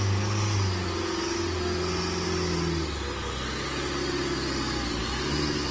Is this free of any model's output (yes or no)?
yes